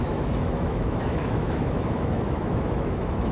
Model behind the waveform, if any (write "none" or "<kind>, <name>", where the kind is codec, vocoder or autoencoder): autoencoder, DAC-VAE